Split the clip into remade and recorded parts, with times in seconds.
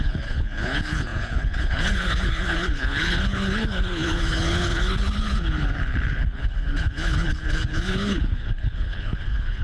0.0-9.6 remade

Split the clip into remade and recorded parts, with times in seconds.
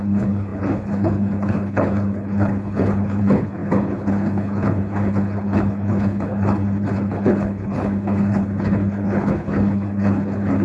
0.0-10.6 remade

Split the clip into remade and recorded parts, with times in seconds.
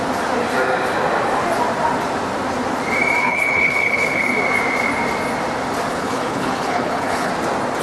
0.0-3.2 recorded; 3.2-4.3 remade; 4.3-5.9 recorded; 5.9-7.3 remade; 7.3-7.8 recorded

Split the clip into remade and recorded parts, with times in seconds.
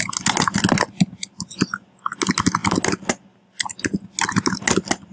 0.0-5.1 recorded